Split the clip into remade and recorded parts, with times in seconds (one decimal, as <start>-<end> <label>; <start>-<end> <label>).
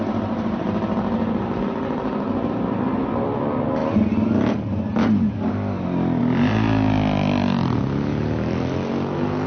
0.0-9.5 recorded